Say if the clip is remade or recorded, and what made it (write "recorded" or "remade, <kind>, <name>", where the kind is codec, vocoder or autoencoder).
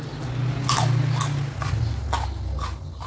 recorded